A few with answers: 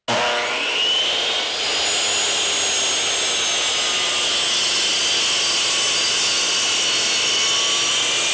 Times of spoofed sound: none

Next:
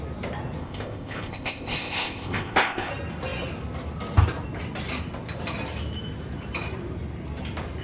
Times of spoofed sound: 0.6-2.9 (codec, ZipCodec)

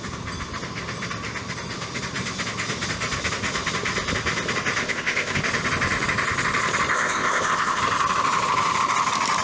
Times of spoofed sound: 4.8-5.4 (codec, ZipCodec); 6.9-7.8

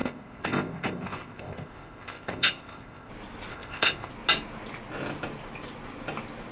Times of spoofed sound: 0.0-3.1 (codec, ZipCodec); 3.5-4.1